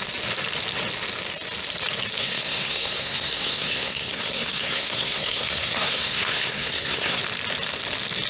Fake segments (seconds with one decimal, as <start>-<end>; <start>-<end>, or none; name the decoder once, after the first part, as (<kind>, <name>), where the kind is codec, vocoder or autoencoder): 2.2-7.2 (codec, SNAC)